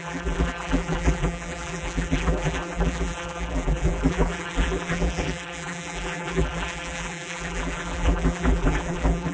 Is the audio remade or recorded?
remade